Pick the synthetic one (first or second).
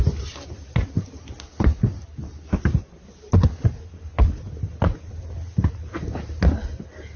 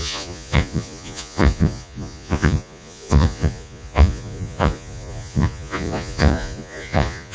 second